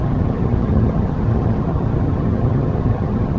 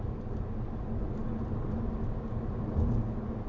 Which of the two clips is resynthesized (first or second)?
first